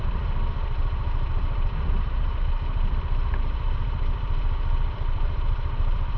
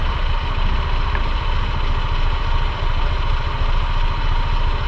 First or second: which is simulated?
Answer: first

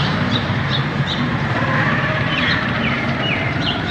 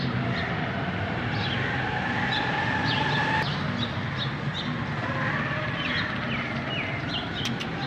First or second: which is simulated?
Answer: first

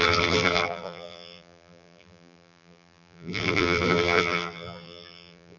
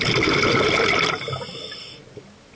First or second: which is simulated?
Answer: first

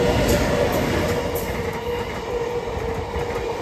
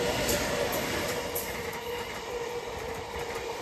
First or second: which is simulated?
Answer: second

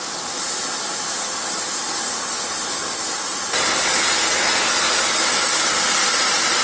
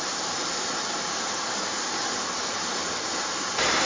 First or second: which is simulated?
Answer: second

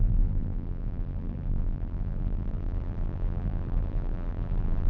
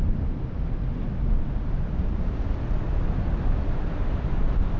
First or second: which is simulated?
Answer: first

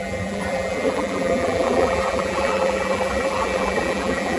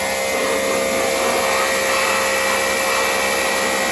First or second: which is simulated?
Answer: first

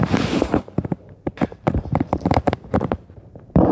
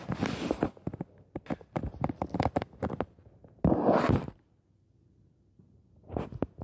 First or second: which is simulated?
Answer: first